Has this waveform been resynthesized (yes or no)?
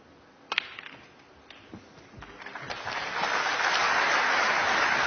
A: no